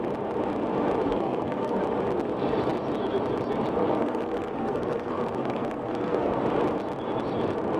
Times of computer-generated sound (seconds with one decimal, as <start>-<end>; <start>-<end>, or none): 1.1-1.8; 3.8-6.4

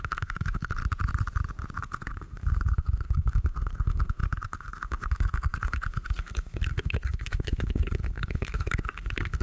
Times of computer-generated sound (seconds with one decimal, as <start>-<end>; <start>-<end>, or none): 0.0-0.8; 1.8-9.4

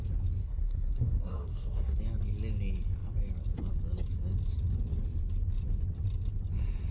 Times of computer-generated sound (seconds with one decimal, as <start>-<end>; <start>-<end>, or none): 0.4-2.0

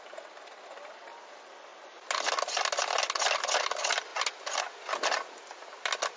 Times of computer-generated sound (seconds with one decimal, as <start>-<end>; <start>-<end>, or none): none

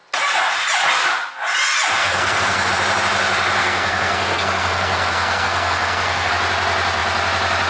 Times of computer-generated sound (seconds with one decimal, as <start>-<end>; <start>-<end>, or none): 2.0-2.7; 3.6-6.3

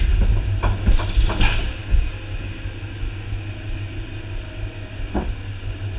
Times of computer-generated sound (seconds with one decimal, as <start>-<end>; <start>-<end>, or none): none

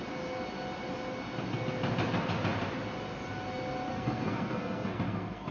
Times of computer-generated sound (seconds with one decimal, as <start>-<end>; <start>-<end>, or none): 3.9-5.5

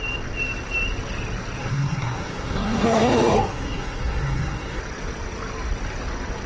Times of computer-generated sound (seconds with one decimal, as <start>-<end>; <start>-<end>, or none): 1.6-4.8